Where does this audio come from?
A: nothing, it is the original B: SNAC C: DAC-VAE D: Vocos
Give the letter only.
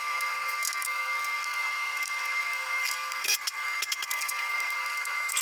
B